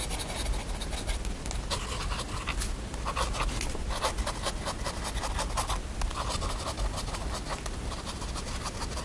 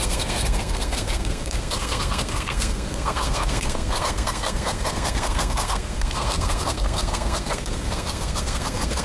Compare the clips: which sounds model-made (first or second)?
second